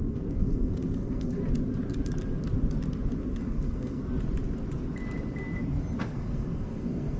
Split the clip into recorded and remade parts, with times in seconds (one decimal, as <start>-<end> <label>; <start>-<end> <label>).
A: 0.0-1.4 remade; 1.4-3.4 recorded; 3.4-4.0 remade; 4.0-6.0 recorded; 6.0-7.2 remade